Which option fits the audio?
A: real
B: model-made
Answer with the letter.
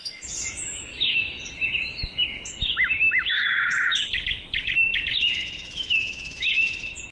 B